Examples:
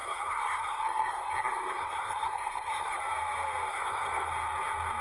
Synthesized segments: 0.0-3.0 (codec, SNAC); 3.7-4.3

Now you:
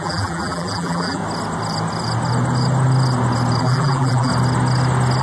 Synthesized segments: 0.0-1.2 (vocoder, BigVGAN v2); 3.6-4.3

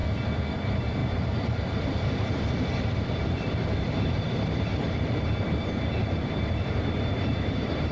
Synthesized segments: 0.5-7.9 (vocoder, BigVGAN v2)